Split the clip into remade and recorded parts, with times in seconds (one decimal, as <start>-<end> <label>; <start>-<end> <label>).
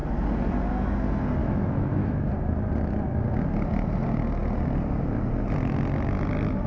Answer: 0.0-1.4 recorded; 1.4-2.3 remade; 2.3-6.7 recorded